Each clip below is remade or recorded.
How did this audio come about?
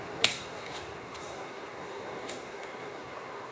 remade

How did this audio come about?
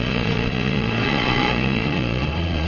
remade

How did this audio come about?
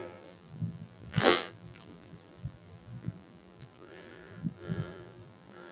remade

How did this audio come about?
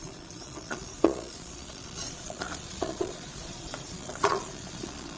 remade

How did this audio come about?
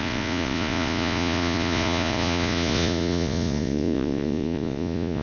remade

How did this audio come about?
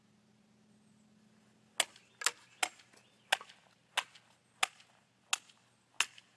recorded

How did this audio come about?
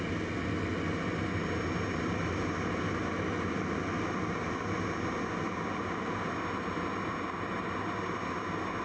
recorded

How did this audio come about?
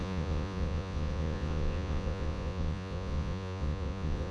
remade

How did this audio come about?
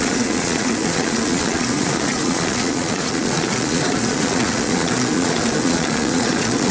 remade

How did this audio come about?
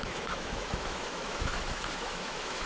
remade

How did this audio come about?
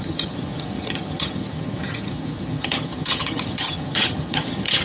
remade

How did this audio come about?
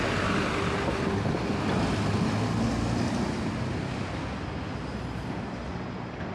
recorded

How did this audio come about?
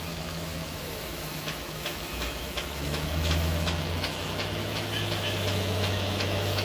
remade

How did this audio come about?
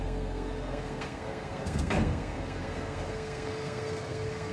remade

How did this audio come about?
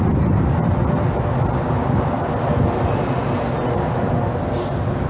recorded